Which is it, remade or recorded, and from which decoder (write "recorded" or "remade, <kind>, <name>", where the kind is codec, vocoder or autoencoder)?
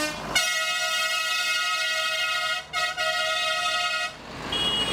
recorded